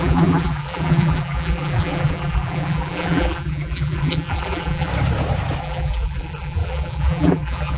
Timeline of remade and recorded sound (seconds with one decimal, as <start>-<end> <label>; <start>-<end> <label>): 0.0-4.9 remade; 4.9-5.6 recorded; 5.6-7.8 remade